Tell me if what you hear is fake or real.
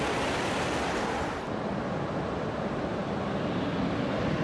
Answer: real